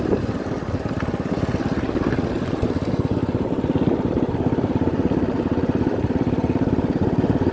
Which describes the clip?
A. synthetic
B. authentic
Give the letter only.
B